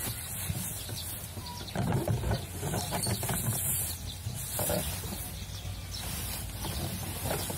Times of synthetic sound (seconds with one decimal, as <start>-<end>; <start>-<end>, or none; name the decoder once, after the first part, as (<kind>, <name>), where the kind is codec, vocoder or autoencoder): none